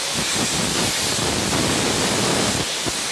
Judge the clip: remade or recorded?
recorded